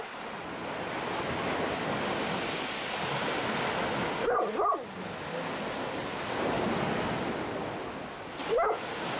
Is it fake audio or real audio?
real